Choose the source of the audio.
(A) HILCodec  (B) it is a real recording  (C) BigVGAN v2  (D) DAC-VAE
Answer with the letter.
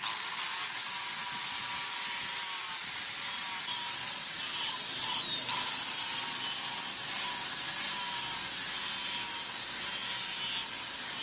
B